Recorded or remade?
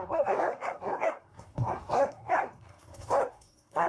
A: remade